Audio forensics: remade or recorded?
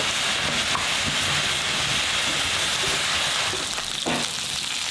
recorded